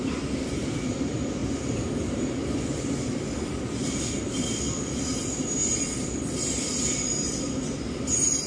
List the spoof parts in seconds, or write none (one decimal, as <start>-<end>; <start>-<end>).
none